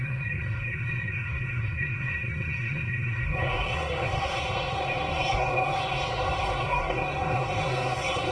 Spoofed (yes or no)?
yes